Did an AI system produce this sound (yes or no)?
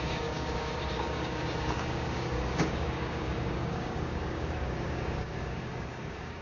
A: yes